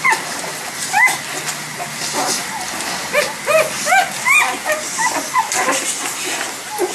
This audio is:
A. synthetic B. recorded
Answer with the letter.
B